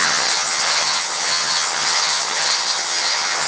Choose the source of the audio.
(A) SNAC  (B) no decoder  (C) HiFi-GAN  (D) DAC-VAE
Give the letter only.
C